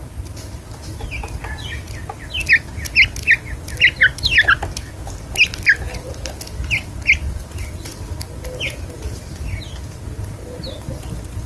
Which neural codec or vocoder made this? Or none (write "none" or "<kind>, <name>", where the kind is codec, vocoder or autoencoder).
none